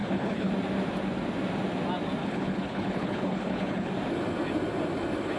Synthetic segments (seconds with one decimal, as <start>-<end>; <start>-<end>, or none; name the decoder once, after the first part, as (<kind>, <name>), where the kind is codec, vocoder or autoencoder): 0.0-0.5 (codec, HILCodec); 2.2-3.9